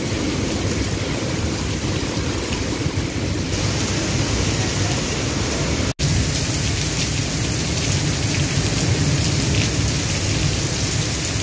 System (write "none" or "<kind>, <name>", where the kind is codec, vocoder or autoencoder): none